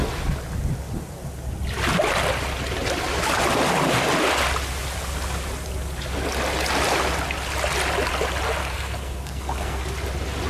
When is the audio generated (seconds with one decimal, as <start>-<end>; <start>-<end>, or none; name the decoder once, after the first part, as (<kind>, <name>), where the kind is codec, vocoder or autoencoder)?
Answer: 8.6-9.8 (codec, SNAC)